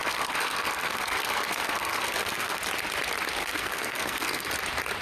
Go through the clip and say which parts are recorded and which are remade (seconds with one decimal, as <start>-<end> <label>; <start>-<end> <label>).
0.0-2.6 remade; 2.6-3.4 recorded; 3.4-4.5 remade; 4.5-5.0 recorded

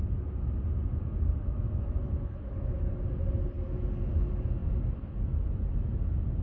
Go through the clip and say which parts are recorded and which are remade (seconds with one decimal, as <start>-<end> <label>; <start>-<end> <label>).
0.0-1.4 recorded; 1.4-2.5 remade; 2.5-6.4 recorded

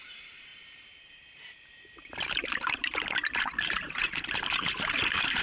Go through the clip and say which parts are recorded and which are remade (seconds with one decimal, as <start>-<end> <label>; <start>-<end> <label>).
0.0-5.4 remade

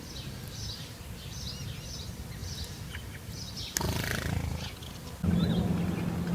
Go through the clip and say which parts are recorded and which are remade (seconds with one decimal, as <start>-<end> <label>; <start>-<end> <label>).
0.0-6.3 recorded